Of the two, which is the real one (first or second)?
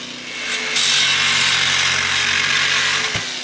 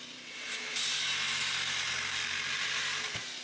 first